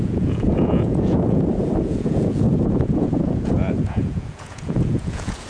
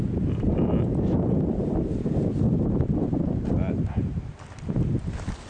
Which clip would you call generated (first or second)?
first